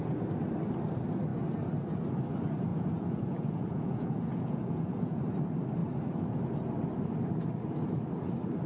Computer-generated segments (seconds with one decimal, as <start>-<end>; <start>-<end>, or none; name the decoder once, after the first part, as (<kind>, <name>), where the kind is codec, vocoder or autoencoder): 2.7-5.2 (vocoder, Vocos)